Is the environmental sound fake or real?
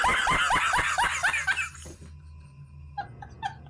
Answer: real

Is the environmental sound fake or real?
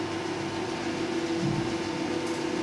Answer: real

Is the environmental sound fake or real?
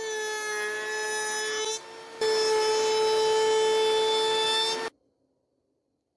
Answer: real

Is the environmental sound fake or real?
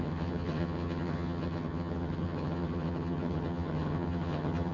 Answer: fake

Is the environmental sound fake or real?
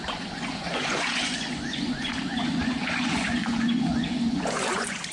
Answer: fake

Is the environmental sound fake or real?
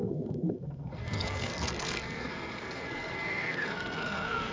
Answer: fake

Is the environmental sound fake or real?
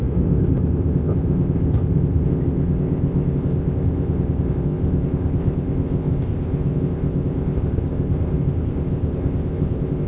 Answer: fake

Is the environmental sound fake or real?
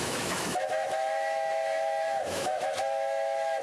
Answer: fake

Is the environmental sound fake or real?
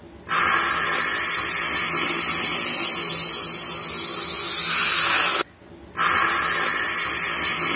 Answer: real